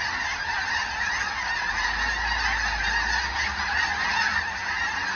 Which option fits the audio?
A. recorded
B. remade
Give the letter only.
A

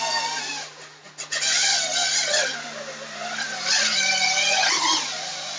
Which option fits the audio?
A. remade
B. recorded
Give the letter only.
B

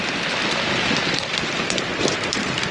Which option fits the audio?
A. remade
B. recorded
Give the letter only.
B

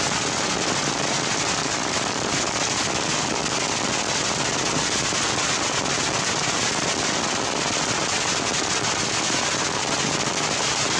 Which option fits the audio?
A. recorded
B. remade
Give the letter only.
A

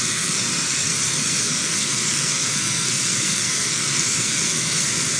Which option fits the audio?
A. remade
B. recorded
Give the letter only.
A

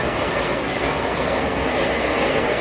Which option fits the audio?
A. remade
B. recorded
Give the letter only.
A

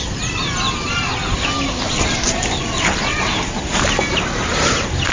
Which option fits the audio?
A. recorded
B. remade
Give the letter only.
A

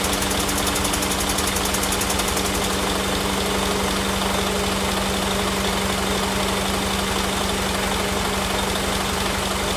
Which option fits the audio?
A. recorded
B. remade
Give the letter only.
A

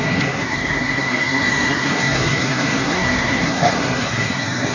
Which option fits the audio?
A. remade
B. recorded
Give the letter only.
A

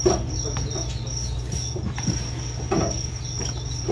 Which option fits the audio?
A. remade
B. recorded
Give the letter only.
B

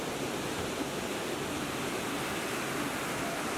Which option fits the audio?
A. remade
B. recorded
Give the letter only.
B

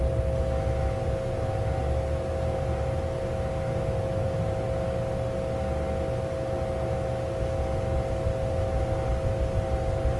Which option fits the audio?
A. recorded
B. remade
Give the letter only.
A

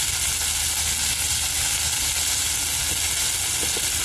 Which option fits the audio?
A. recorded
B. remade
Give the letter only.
A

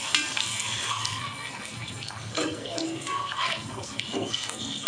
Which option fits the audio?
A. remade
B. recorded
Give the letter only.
A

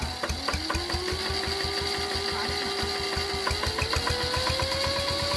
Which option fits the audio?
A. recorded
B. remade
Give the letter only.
A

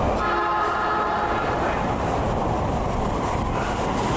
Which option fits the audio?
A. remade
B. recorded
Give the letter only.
B